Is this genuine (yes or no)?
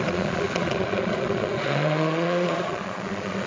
no